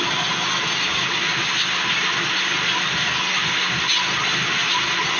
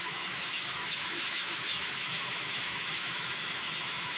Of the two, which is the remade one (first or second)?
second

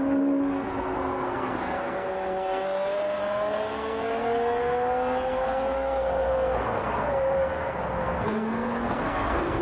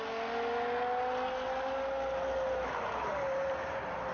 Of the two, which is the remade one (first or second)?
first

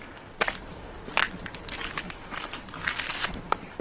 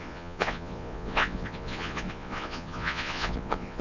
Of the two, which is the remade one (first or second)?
second